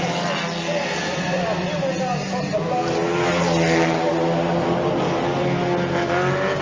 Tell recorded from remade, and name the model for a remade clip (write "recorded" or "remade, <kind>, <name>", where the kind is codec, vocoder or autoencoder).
recorded